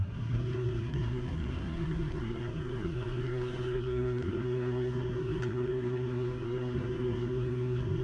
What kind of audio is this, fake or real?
fake